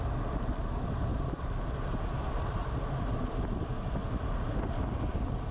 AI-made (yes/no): no